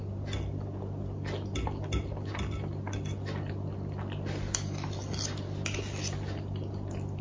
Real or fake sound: real